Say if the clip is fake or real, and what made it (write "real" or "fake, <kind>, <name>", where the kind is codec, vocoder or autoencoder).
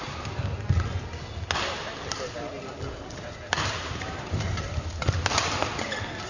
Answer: real